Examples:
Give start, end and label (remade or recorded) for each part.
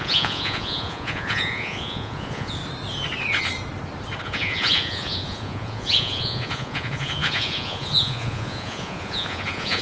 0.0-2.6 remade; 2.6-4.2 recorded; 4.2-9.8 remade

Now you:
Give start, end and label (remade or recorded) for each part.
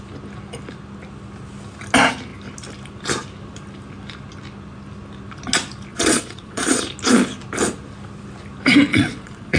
0.0-5.9 recorded; 5.9-6.8 remade; 6.8-8.9 recorded; 8.9-9.6 remade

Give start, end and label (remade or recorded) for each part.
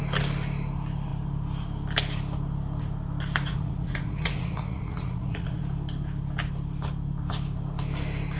0.0-3.5 recorded; 3.5-5.6 remade; 5.6-8.4 recorded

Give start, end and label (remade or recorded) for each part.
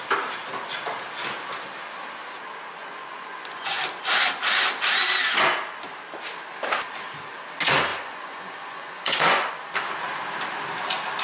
0.0-2.8 recorded; 2.8-3.8 remade; 3.8-7.9 recorded; 7.9-9.5 remade; 9.5-11.2 recorded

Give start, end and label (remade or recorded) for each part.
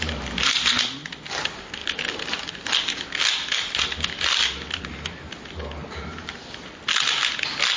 0.0-7.8 recorded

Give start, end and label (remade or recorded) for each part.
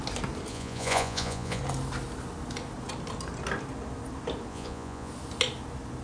0.0-0.5 recorded; 0.5-1.6 remade; 1.6-4.5 recorded; 4.5-5.1 remade; 5.1-6.0 recorded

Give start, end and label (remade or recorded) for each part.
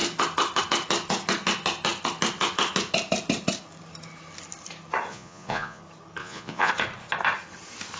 0.0-5.1 recorded; 5.1-5.8 remade; 5.8-6.2 recorded; 6.2-6.7 remade; 6.7-8.0 recorded